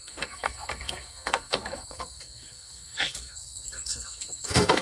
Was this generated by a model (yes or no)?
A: yes